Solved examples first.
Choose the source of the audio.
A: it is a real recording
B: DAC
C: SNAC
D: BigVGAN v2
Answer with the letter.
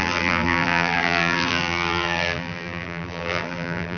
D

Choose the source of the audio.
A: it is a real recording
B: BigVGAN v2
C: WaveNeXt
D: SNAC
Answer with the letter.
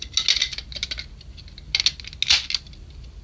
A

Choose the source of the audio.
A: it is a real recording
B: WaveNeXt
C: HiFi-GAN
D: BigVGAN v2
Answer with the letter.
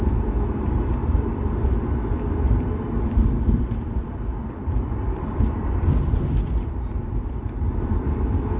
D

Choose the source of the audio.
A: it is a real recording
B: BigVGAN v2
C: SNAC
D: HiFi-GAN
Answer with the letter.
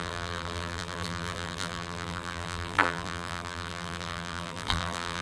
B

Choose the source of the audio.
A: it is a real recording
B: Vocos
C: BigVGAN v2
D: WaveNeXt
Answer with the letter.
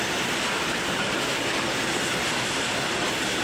A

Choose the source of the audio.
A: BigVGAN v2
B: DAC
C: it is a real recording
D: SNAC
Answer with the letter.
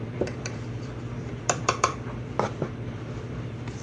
A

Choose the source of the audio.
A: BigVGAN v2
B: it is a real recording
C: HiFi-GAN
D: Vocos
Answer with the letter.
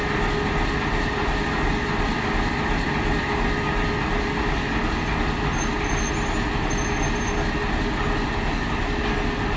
B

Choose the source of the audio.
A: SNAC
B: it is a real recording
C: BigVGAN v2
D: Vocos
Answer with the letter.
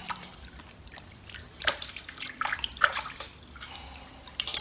C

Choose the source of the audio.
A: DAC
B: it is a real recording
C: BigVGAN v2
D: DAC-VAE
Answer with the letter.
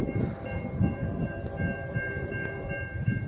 C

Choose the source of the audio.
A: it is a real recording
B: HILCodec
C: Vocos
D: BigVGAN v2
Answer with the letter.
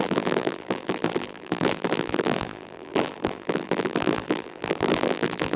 D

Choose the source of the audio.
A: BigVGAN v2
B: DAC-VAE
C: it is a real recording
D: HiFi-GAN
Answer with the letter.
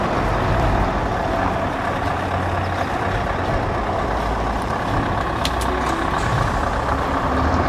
C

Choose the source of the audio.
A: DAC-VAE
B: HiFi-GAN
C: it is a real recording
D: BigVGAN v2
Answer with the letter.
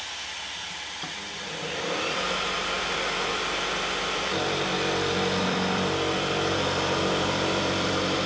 D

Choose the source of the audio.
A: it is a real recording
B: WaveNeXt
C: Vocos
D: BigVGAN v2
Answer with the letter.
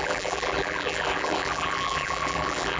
D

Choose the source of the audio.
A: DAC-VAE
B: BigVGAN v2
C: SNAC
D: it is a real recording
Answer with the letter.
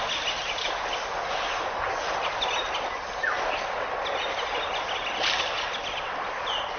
D